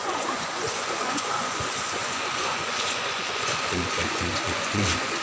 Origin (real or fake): fake